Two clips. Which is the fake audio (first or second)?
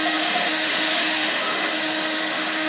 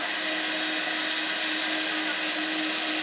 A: first